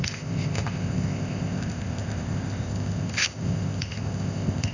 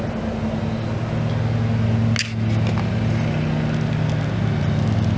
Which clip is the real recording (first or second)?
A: second